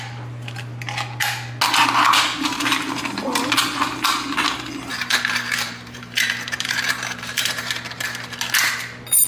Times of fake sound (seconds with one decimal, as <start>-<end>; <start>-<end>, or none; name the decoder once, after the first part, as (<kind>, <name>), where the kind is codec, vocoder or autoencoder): 4.9-7.7 (vocoder, BigVGAN v2)